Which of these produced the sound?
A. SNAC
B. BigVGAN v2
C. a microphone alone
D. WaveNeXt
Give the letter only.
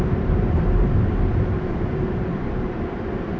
B